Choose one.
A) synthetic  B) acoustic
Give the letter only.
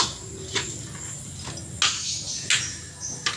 B